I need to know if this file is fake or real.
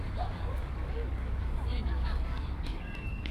fake